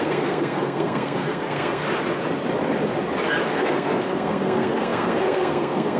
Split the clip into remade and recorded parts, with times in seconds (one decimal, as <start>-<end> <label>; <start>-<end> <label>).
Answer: 0.0-1.8 remade; 1.8-3.5 recorded; 3.5-6.0 remade

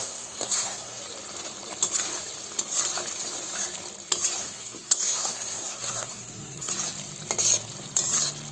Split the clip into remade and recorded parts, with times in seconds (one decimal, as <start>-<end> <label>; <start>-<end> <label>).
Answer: 0.0-1.0 remade; 1.0-4.4 recorded; 4.4-6.7 remade; 6.7-8.5 recorded

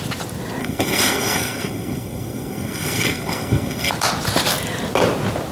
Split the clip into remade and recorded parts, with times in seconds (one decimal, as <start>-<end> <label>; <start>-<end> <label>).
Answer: 0.0-0.6 recorded; 0.6-3.9 remade; 3.9-5.5 recorded

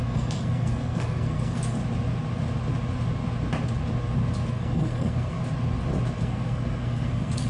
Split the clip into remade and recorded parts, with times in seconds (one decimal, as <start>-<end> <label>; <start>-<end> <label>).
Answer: 0.0-1.8 remade; 1.8-4.5 recorded; 4.5-5.4 remade; 5.4-6.2 recorded; 6.2-7.5 remade

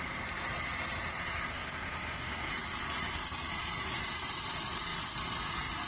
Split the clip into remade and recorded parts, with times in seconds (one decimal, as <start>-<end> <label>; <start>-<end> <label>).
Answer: 0.0-1.5 recorded; 1.5-2.5 remade; 2.5-5.9 recorded

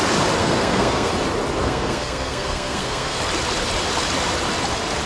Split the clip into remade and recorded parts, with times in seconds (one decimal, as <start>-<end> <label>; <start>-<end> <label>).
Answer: 0.0-0.4 recorded; 0.4-1.1 remade; 1.1-1.6 recorded; 1.6-3.2 remade; 3.2-5.1 recorded

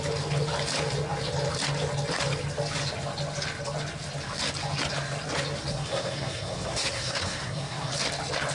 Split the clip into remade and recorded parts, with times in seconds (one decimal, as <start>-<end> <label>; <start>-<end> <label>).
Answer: 0.0-5.7 recorded; 5.7-7.9 remade; 7.9-8.5 recorded